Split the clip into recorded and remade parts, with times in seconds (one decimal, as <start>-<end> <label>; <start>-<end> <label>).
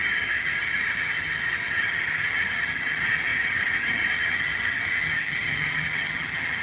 0.0-6.6 remade